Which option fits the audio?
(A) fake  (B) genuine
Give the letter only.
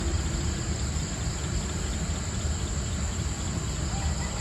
B